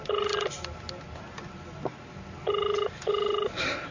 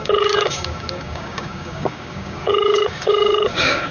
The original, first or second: first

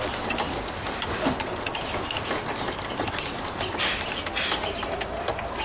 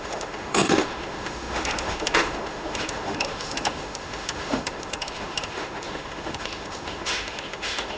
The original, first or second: first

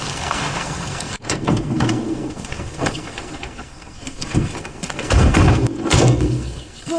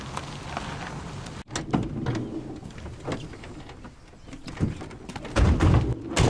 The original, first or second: second